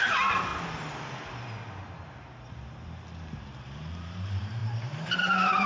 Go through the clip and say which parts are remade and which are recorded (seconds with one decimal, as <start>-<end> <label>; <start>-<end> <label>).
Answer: 0.0-0.5 remade; 0.5-3.6 recorded; 3.6-4.6 remade; 4.6-5.2 recorded; 5.2-5.7 remade